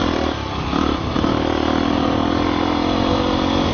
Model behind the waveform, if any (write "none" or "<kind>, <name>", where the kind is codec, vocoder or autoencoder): none